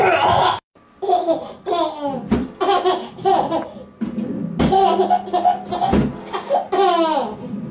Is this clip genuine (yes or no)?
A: yes